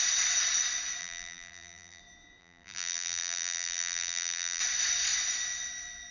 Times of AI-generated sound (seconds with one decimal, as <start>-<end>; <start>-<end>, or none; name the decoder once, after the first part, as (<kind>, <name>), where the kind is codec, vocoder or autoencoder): 1.0-2.0 (vocoder, BigVGAN v2); 2.4-4.6